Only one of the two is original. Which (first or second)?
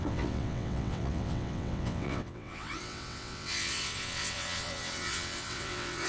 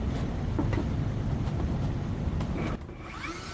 second